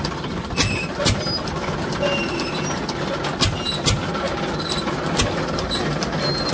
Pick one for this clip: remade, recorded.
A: recorded